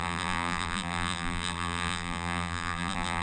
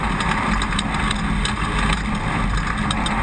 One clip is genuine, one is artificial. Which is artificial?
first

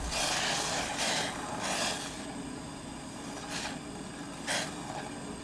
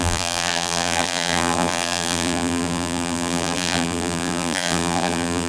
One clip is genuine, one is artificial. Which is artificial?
second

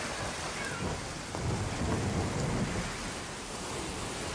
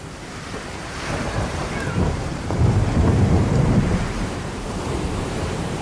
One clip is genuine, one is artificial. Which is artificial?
second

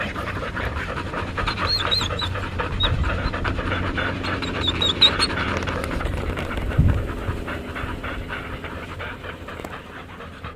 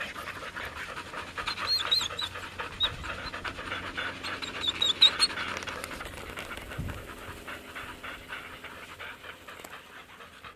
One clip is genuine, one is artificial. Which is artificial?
first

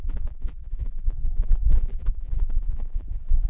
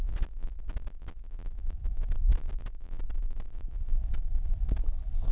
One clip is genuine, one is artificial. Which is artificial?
first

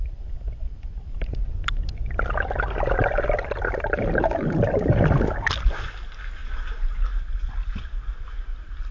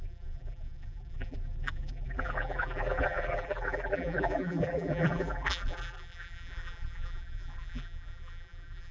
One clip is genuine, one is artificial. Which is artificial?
second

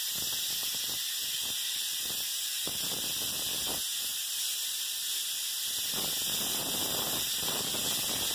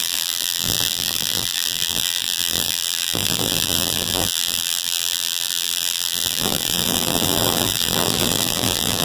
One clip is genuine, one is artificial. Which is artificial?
second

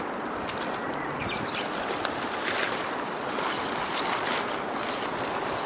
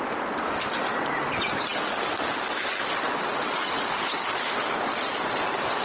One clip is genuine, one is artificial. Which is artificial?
first